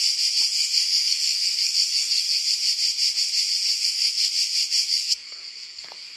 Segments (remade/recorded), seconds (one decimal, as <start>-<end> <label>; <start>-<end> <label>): 0.0-0.5 recorded; 0.5-2.4 remade; 2.4-3.8 recorded; 3.8-4.3 remade; 4.3-4.9 recorded; 4.9-6.2 remade